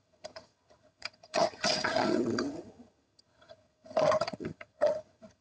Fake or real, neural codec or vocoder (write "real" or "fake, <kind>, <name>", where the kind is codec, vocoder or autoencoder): fake, vocoder, HiFi-GAN